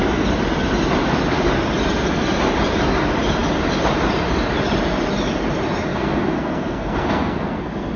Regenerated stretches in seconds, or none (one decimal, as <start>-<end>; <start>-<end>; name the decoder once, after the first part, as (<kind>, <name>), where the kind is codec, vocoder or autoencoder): 5.9-8.0 (codec, SNAC)